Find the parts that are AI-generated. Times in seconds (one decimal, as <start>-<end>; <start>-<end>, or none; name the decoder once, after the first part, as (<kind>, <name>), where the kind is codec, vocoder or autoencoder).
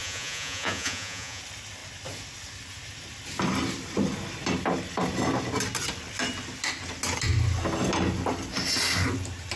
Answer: 0.0-1.4 (vocoder, Vocos)